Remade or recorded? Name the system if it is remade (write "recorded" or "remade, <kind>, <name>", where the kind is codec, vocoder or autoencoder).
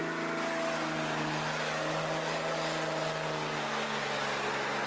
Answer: recorded